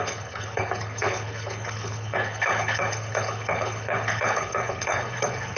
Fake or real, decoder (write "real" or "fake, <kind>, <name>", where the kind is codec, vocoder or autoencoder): fake, codec, HILCodec